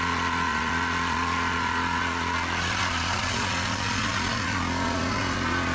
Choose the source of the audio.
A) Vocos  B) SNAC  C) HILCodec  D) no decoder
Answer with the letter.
A